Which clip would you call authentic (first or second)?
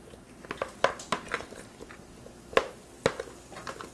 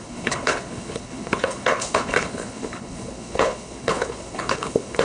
first